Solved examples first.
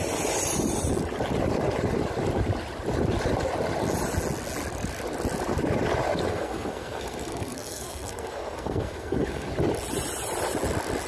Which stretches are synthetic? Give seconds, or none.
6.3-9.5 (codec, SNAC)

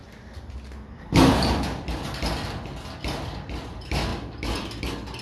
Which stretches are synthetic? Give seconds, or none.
none

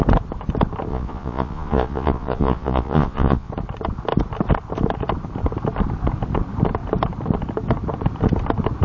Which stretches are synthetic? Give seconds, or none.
0.9-3.5 (vocoder, Vocos)

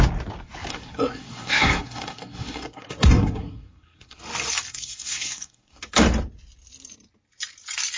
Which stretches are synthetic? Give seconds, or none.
0.7-4.2 (codec, SNAC); 4.7-5.8

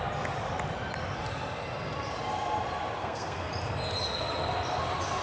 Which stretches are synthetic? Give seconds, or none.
3.0-3.5 (codec, SNAC)

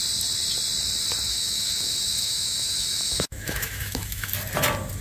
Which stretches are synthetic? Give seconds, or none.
1.3-4.3 (autoencoder, DAC-VAE)